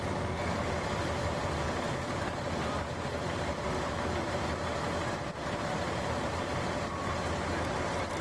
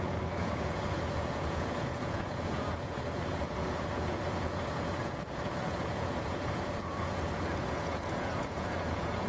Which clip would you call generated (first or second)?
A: second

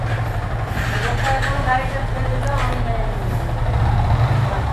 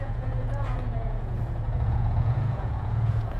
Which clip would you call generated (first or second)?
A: second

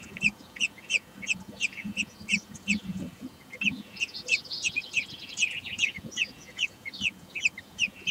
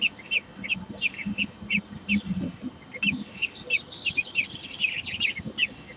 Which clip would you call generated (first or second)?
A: first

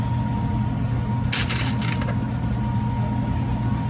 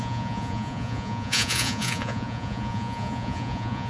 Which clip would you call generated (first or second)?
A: second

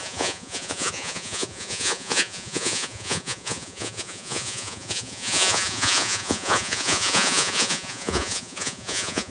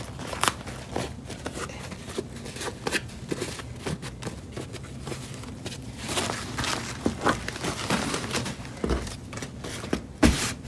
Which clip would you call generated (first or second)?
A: first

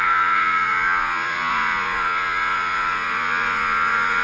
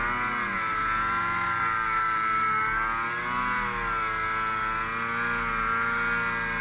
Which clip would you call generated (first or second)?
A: first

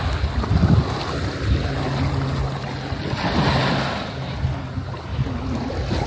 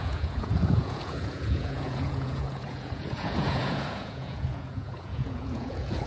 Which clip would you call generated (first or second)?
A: second